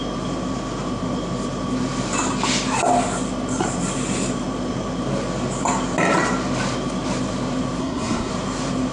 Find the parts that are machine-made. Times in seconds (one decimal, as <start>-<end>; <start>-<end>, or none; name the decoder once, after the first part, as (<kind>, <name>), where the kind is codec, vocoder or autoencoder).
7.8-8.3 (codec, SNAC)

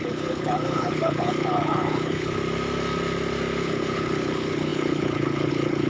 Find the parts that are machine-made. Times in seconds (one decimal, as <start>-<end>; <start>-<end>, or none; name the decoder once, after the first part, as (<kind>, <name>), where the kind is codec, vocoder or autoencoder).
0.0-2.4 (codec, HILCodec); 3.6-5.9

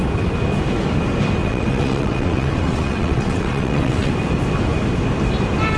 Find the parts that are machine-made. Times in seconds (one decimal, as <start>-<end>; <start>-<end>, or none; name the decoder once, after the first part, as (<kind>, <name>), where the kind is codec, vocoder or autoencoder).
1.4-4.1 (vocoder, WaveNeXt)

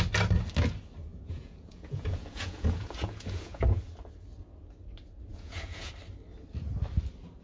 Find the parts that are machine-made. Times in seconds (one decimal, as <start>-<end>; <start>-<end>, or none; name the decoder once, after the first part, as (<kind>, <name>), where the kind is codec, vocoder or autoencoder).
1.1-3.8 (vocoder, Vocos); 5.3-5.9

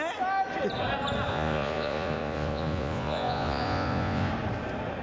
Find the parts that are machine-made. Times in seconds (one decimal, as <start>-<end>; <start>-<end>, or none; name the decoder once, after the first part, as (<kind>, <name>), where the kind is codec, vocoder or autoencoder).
1.3-4.3 (vocoder, Vocos)

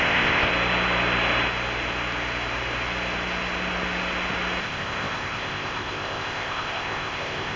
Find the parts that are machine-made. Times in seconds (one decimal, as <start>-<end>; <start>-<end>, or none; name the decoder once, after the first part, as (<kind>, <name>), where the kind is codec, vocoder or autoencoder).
0.0-0.5 (codec, ZipCodec); 4.6-7.6